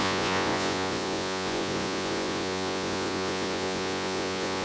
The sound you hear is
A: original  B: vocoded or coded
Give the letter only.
B